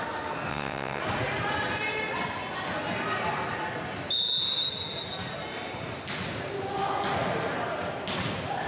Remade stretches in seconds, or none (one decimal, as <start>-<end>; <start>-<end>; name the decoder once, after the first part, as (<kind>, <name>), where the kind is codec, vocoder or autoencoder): 0.5-1.0 (vocoder, WaveNeXt)